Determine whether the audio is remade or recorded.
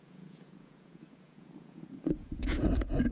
remade